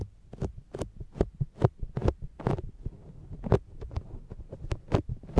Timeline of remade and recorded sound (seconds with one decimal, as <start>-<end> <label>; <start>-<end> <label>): 0.0-5.4 recorded